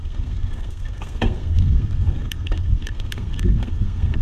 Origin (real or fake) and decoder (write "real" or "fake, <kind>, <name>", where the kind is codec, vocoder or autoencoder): fake, codec, SNAC